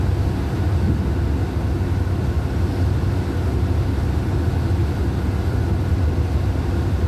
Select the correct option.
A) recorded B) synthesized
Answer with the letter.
A